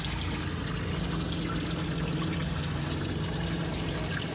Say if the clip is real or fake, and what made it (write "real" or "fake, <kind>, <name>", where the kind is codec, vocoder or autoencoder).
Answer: real